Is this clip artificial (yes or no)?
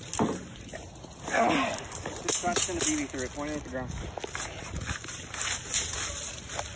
no